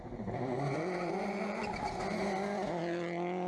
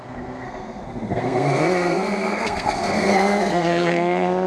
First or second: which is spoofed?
second